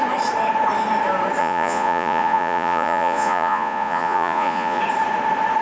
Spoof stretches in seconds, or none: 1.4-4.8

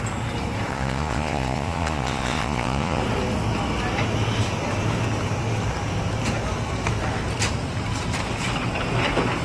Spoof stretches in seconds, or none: 0.7-3.0